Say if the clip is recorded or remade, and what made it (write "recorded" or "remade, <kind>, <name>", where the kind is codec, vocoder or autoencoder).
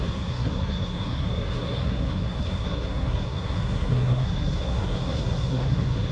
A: remade, codec, SNAC